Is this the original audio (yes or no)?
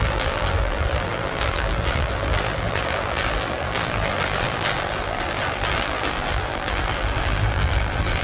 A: no